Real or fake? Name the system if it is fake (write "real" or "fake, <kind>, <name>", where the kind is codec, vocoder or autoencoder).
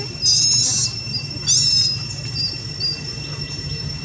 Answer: real